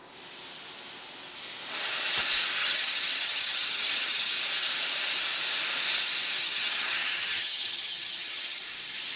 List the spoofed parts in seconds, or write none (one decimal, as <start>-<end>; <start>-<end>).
2.6-4.3; 6.4-8.6